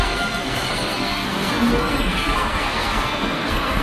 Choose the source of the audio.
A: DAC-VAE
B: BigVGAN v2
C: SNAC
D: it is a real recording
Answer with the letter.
C